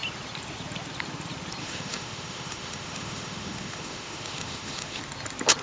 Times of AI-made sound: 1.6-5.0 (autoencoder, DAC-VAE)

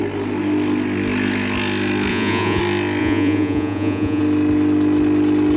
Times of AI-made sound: 2.1-2.6 (vocoder, Vocos); 3.0-4.2

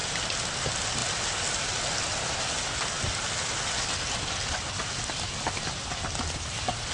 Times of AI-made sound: none

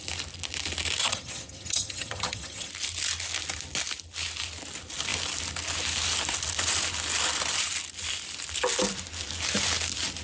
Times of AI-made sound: 1.0-2.7 (vocoder, HiFi-GAN)

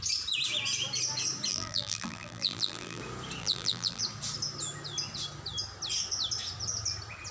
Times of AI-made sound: 1.5-3.0 (vocoder, BigVGAN v2); 3.4-4.0

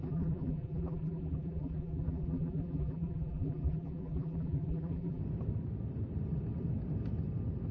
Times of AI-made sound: 0.0-5.2 (vocoder, BigVGAN v2)

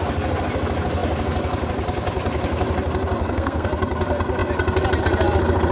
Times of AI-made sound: 3.2-3.7 (codec, SNAC)

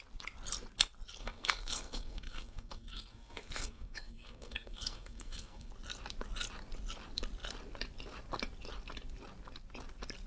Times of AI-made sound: 1.2-5.7 (codec, SNAC)